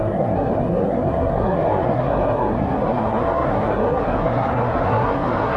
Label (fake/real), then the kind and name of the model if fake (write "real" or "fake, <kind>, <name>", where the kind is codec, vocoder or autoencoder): fake, codec, SNAC